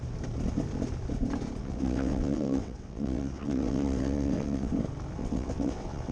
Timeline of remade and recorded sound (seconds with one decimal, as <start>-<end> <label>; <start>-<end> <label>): 0.0-1.6 recorded; 1.6-4.7 remade; 4.7-5.2 recorded; 5.2-6.1 remade